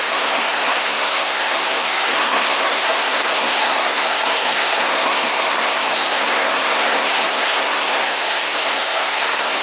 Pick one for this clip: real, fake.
fake